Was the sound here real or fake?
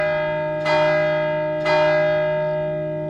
real